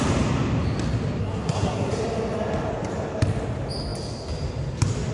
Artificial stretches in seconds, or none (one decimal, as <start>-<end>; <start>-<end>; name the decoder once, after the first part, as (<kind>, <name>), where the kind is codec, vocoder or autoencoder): 1.2-1.9 (codec, SNAC)